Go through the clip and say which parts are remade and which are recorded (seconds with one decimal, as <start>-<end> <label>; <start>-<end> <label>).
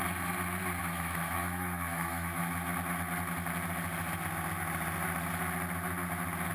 0.0-0.8 recorded; 0.8-2.4 remade; 2.4-6.5 recorded